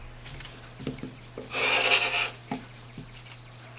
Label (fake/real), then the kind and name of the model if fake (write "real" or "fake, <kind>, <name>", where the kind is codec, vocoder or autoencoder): real